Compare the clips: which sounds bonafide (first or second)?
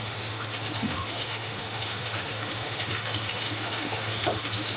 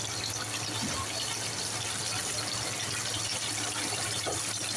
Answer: second